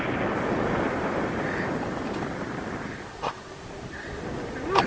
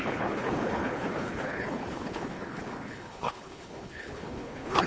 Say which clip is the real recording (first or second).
first